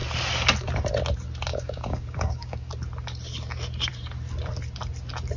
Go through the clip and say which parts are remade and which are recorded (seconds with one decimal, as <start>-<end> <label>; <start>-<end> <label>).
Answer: 0.0-1.5 recorded; 1.5-2.7 remade; 2.7-5.4 recorded